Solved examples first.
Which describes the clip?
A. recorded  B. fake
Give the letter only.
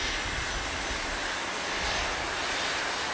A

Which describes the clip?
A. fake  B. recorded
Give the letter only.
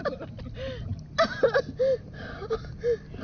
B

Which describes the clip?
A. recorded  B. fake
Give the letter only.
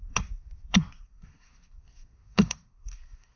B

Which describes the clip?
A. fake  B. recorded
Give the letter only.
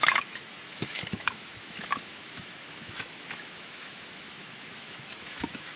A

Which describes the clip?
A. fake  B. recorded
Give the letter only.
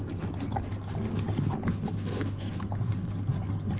B